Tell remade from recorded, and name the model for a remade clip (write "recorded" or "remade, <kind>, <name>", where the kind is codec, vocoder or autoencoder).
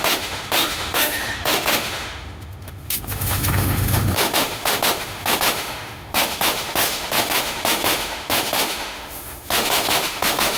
remade, autoencoder, DAC-VAE